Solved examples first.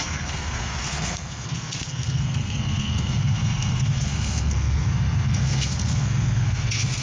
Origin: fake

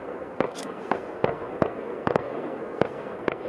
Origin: fake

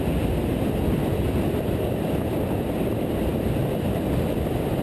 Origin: real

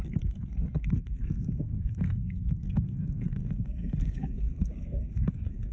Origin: fake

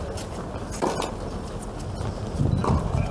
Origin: real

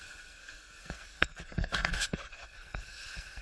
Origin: fake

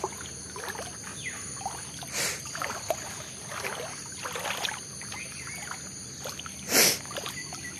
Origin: real